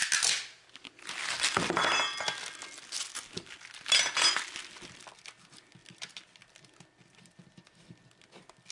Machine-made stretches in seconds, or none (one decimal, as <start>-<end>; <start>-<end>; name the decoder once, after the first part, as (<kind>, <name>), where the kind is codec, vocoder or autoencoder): none